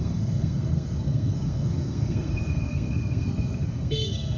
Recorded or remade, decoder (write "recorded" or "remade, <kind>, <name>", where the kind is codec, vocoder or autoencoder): remade, codec, SNAC